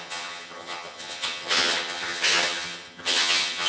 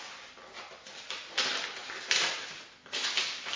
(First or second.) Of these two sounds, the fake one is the first